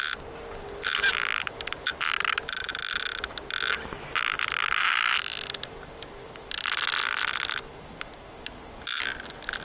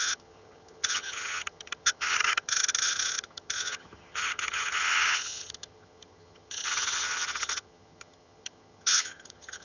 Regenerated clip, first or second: second